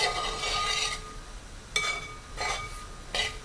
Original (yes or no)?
yes